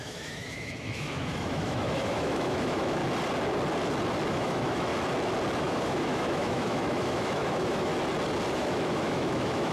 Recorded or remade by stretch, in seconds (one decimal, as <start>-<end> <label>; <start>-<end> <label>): 0.0-3.0 remade; 3.0-4.3 recorded; 4.3-4.9 remade; 4.9-5.6 recorded; 5.6-7.9 remade; 7.9-8.5 recorded; 8.5-9.7 remade